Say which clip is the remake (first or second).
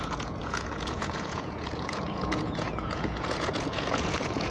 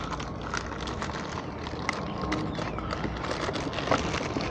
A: first